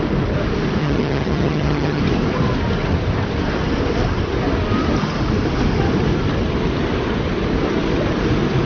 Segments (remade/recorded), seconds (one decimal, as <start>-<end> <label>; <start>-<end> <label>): 0.0-0.8 recorded; 0.8-2.0 remade; 2.0-8.7 recorded